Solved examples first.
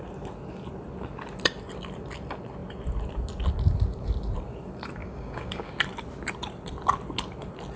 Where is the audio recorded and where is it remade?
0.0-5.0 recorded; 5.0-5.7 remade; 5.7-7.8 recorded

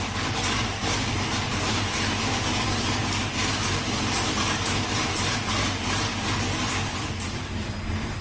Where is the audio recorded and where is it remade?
0.0-3.0 remade; 3.0-4.9 recorded; 4.9-6.1 remade; 6.1-7.1 recorded; 7.1-8.2 remade